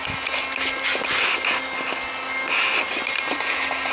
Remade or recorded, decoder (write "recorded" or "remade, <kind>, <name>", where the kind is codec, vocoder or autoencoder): recorded